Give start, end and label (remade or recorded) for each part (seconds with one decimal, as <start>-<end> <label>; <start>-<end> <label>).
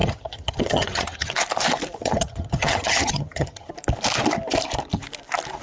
0.0-1.3 remade; 1.3-2.0 recorded; 2.0-3.7 remade; 3.7-5.6 recorded